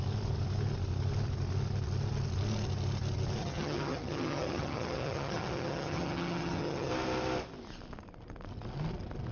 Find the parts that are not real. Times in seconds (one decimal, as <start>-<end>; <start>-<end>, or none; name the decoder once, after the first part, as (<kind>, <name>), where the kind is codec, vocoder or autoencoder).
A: 3.4-6.9 (vocoder, HiFi-GAN)